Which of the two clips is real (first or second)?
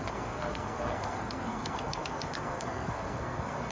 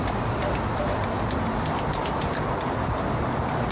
second